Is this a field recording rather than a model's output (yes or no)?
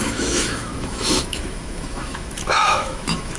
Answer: no